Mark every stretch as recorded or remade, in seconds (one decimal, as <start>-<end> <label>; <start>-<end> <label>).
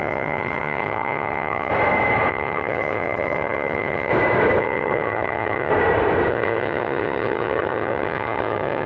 0.0-1.7 remade; 1.7-2.3 recorded; 2.3-4.1 remade; 4.1-4.6 recorded; 4.6-5.7 remade; 5.7-6.3 recorded; 6.3-8.9 remade